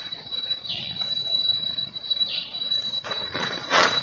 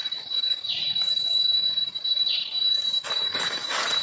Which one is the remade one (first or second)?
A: first